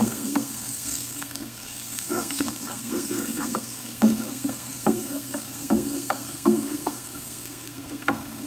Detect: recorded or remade remade